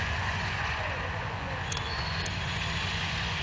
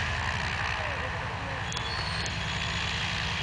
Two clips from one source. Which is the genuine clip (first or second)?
second